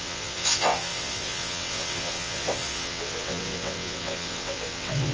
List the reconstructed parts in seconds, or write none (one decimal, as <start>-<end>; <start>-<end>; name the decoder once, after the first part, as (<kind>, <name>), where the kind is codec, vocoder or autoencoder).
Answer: 0.0-5.1 (vocoder, WaveNeXt)